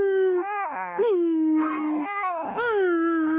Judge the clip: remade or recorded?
remade